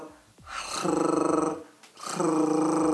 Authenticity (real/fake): real